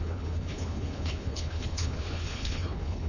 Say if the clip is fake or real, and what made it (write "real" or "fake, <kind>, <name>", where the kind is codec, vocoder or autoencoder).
fake, codec, HILCodec